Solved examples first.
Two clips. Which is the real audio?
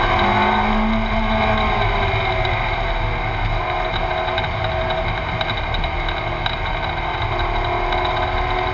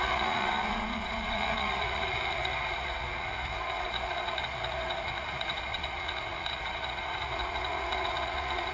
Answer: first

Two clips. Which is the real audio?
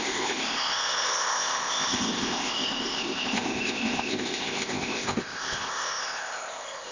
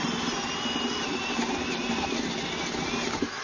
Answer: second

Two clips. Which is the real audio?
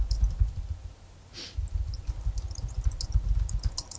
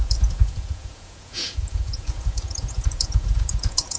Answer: first